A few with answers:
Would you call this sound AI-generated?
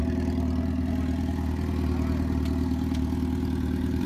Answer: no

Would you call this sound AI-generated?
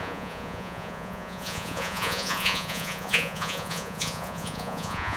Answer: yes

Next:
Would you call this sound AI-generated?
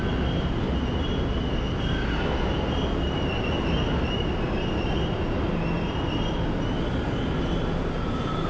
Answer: no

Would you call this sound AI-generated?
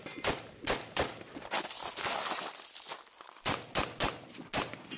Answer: no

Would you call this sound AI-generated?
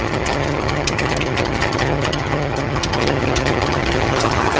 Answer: yes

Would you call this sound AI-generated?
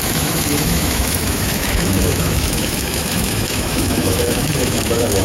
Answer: yes